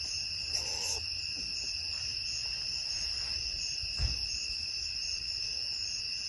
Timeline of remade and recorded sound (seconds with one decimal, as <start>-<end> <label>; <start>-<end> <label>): 0.0-6.3 remade